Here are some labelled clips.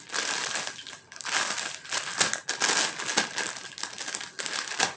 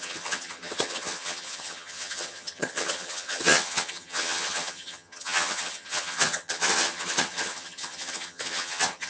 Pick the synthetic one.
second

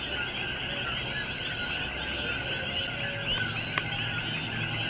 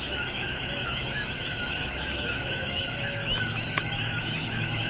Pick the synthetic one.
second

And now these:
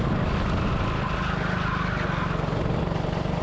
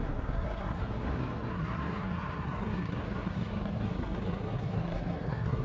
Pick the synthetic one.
second